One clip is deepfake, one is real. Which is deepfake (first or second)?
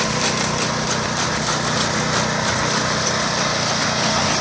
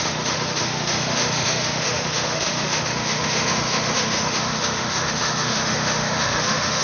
second